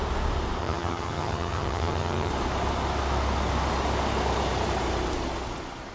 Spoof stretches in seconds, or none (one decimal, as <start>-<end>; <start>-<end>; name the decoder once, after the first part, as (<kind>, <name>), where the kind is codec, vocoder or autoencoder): 0.6-2.3 (vocoder, HiFi-GAN)